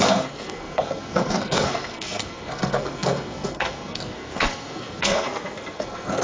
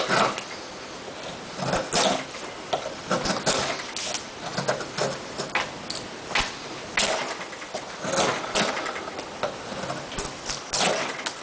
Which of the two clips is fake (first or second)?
first